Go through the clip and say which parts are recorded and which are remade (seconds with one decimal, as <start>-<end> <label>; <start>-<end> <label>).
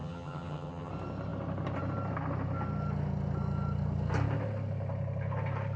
0.0-0.9 remade; 0.9-5.8 recorded